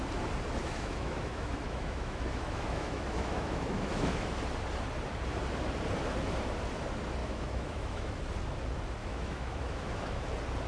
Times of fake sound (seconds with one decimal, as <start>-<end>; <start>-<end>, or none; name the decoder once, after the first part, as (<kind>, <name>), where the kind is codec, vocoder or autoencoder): 0.6-4.3 (autoencoder, DAC-VAE); 7.2-8.1; 9.0-10.2